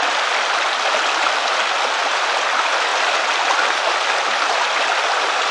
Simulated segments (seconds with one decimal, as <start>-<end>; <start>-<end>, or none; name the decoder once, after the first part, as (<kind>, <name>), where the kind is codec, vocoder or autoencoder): none